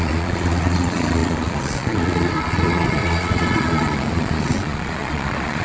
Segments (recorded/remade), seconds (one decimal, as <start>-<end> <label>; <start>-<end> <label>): 0.0-5.6 remade